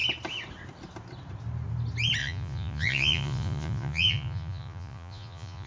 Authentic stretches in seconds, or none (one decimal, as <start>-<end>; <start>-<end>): 0.0-2.2